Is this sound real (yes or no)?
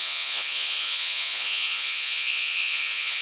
no